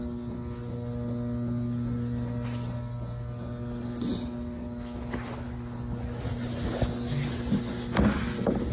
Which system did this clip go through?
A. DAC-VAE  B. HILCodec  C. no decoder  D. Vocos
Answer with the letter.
C